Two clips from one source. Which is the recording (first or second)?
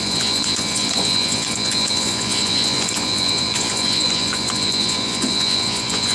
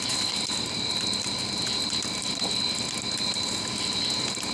second